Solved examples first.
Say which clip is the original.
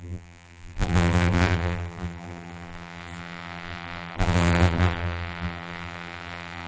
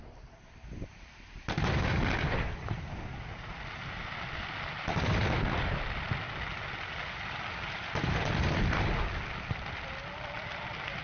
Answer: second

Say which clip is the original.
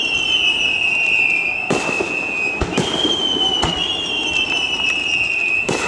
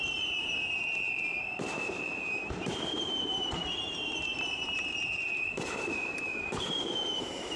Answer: first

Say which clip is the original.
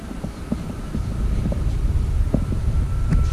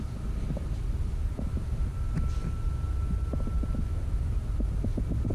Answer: second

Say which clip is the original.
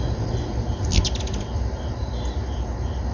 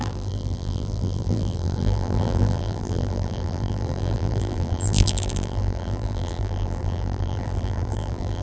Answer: first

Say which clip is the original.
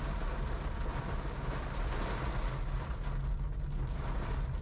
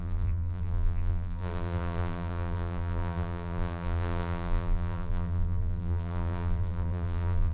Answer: first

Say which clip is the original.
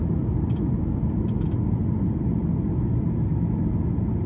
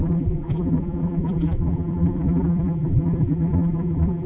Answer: first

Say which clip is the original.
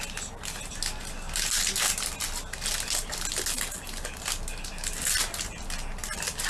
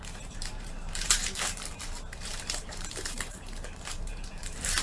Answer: first